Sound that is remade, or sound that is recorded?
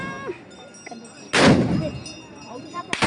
recorded